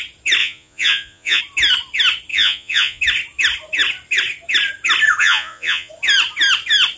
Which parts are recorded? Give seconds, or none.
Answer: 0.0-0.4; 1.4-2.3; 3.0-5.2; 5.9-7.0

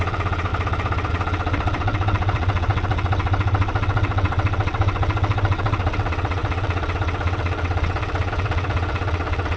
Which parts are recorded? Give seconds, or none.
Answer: 0.5-1.1

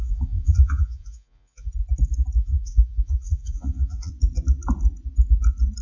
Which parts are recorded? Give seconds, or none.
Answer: 1.7-2.4; 4.1-5.8

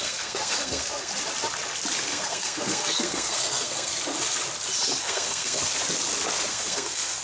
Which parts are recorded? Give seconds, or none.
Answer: 1.1-2.0; 3.9-5.0; 5.7-6.5

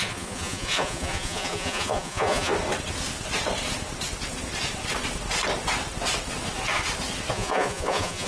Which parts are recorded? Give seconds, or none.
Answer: 2.5-7.3

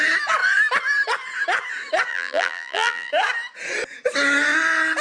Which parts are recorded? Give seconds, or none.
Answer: 0.0-2.1; 3.1-5.0

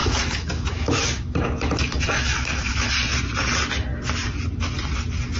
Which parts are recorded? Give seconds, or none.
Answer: 2.9-5.4